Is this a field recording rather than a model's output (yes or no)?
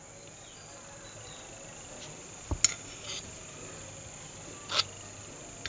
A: yes